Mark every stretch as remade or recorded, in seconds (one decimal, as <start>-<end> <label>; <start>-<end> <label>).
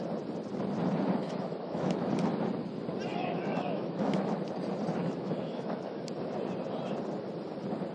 0.0-1.2 recorded; 1.2-2.1 remade; 2.1-3.1 recorded; 3.1-4.4 remade; 4.4-5.0 recorded; 5.0-6.0 remade; 6.0-7.9 recorded